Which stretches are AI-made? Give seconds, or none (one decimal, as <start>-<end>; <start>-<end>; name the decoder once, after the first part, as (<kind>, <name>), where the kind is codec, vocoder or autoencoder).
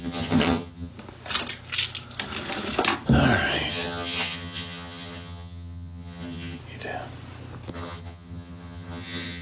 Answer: 0.0-0.9 (vocoder, HiFi-GAN); 3.7-6.6; 7.7-9.4